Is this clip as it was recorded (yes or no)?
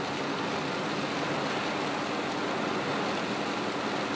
yes